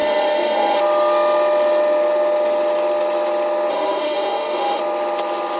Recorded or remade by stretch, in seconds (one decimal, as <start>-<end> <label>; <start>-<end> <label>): 0.0-0.8 remade; 0.8-3.7 recorded; 3.7-4.8 remade; 4.8-5.6 recorded